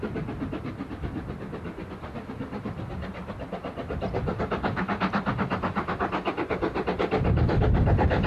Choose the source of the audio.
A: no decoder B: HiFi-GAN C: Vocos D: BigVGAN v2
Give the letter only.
A